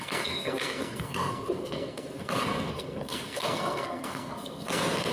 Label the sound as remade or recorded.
remade